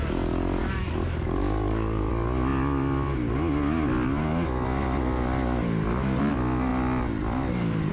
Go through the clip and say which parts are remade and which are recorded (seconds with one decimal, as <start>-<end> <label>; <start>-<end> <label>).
0.0-0.6 recorded; 0.6-2.1 remade; 2.1-7.9 recorded